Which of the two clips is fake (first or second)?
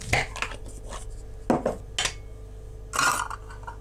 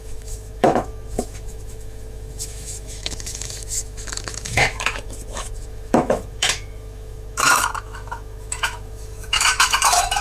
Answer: second